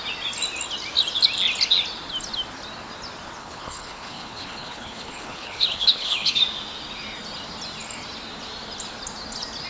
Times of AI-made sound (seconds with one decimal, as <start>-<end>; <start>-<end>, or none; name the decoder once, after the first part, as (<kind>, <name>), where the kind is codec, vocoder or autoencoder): 3.4-6.4 (codec, HILCodec)